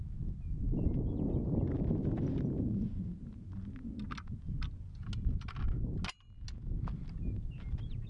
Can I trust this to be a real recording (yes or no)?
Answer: yes